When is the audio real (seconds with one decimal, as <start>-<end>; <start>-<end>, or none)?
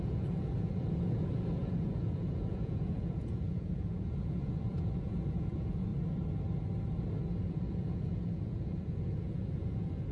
5.9-7.4